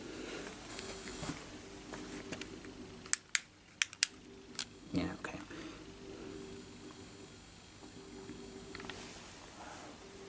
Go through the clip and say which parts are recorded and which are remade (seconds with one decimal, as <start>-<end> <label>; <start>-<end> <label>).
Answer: 0.0-0.7 recorded; 0.7-1.3 remade; 1.3-4.6 recorded; 4.6-5.2 remade; 5.2-6.3 recorded; 6.3-8.8 remade; 8.8-10.3 recorded